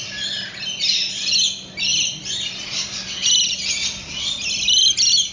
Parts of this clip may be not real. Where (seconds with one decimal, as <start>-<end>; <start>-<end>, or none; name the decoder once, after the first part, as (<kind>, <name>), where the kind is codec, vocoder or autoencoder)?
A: 0.0-5.3 (vocoder, BigVGAN v2)